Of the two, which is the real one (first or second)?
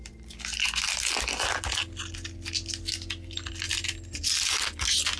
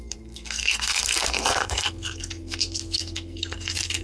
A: first